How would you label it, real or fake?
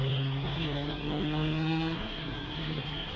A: fake